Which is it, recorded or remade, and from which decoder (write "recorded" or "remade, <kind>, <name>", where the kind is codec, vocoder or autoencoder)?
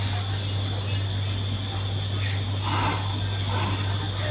recorded